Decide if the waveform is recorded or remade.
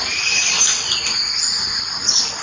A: recorded